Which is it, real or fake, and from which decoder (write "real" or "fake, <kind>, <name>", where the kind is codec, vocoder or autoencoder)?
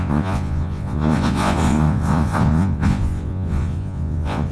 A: fake, vocoder, Vocos